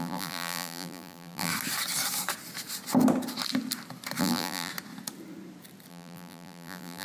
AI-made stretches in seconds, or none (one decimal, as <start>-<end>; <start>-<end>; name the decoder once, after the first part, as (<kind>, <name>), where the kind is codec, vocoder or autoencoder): 0.0-1.5 (vocoder, BigVGAN v2); 4.2-4.7; 5.9-7.0